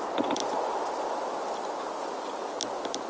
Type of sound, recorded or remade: recorded